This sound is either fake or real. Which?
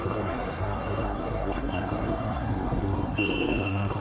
fake